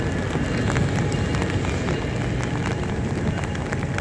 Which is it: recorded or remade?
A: recorded